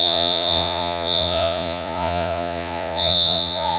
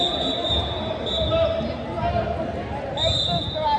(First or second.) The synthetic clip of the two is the first